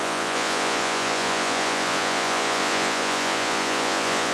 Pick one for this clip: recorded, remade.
remade